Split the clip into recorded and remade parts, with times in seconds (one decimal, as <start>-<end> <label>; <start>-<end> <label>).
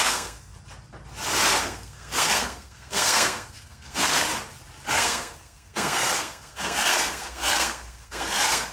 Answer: 0.0-0.5 remade; 0.5-1.6 recorded; 1.6-4.3 remade; 4.3-4.9 recorded; 4.9-8.7 remade